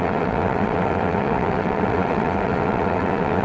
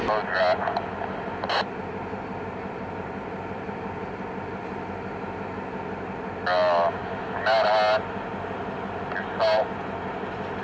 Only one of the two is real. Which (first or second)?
second